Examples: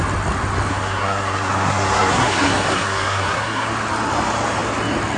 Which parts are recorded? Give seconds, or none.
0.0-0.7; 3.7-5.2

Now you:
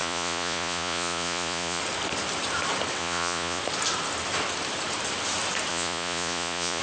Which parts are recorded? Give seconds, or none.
1.8-3.0; 3.6-5.7

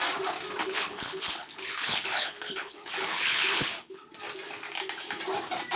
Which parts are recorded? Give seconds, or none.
0.0-0.6; 4.1-5.8

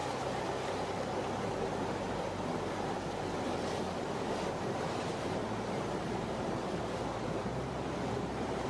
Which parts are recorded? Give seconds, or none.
0.0-4.5; 7.5-8.1